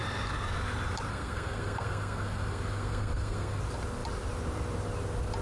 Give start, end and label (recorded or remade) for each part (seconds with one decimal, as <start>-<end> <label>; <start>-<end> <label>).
0.0-1.1 recorded; 1.1-3.6 remade; 3.6-5.4 recorded